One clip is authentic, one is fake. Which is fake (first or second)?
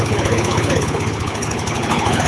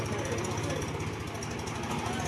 first